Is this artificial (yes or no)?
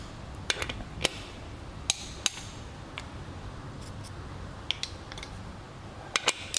no